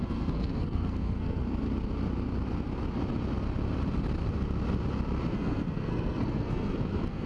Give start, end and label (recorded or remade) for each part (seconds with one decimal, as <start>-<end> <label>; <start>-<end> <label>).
0.0-1.4 remade; 1.4-5.3 recorded; 5.3-7.3 remade